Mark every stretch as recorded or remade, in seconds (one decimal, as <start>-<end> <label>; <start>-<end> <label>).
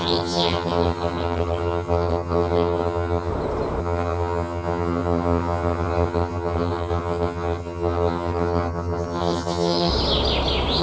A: 0.0-3.3 remade; 3.3-3.8 recorded; 3.8-9.9 remade; 9.9-10.8 recorded